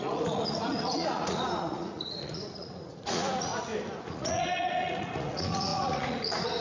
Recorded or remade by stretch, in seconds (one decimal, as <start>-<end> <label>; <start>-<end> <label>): 0.0-3.5 remade; 3.5-4.0 recorded; 4.0-6.6 remade